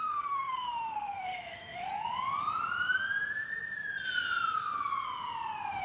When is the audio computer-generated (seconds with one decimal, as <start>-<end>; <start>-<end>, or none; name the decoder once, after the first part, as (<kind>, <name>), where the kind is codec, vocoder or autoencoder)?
0.0-1.9 (autoencoder, DAC-VAE)